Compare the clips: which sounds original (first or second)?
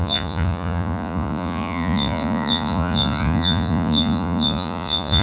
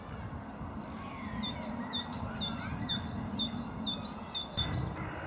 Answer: second